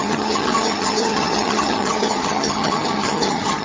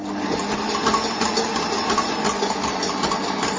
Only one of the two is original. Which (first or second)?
second